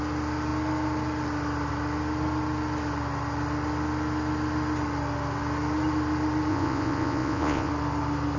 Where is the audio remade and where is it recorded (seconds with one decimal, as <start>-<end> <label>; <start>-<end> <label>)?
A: 0.0-6.5 recorded; 6.5-7.7 remade; 7.7-8.4 recorded